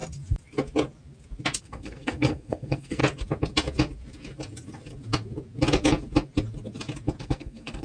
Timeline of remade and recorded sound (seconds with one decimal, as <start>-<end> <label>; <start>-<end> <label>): 0.0-1.6 recorded; 1.6-3.0 remade; 3.0-7.2 recorded; 7.2-7.8 remade